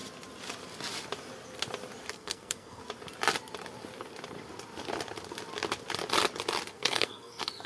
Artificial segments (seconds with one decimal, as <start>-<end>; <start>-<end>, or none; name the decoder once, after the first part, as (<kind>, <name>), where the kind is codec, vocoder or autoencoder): 2.1-2.8 (codec, SNAC); 6.7-7.7